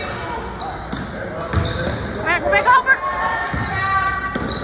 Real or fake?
real